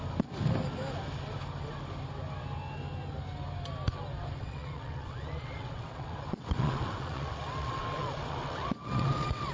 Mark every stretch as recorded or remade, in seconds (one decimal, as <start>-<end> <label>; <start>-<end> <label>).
0.0-4.4 recorded; 4.4-9.5 remade